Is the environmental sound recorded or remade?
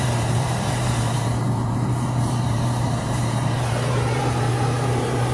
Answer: remade